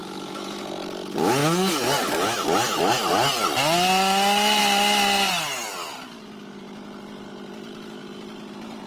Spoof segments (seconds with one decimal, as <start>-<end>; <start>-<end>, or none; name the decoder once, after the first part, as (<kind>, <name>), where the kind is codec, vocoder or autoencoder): 0.0-0.6 (autoencoder, DAC-VAE)